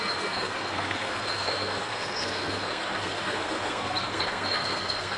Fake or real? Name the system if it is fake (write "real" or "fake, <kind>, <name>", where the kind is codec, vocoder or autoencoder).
fake, codec, SNAC